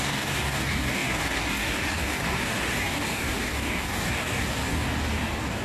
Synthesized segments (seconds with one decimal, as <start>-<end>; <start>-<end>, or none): 0.0-5.6